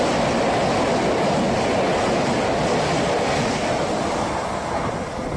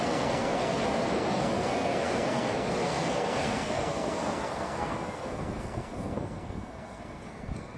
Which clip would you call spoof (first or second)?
second